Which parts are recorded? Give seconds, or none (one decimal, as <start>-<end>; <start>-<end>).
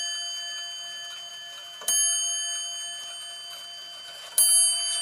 0.0-5.0